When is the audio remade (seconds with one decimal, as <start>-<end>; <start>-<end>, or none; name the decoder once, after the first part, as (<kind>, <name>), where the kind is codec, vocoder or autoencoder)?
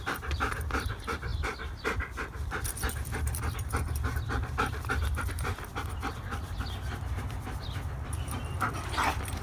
0.0-1.3 (vocoder, BigVGAN v2); 2.9-9.4